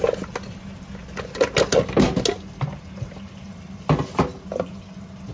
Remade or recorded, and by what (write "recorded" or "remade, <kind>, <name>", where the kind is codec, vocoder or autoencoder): recorded